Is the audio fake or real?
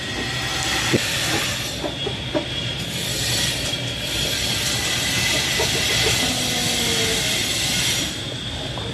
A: real